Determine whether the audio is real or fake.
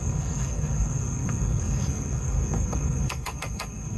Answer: fake